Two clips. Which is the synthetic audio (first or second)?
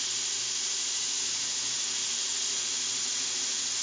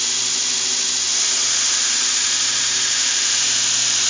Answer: first